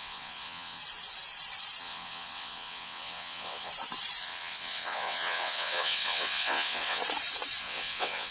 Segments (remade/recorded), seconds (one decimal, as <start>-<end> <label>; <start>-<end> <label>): 0.0-0.8 remade; 0.8-1.8 recorded; 1.8-3.7 remade; 3.7-4.2 recorded; 4.2-7.0 remade; 7.0-7.6 recorded; 7.6-8.3 remade